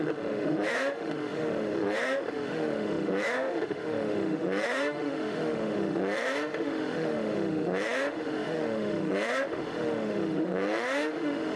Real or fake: fake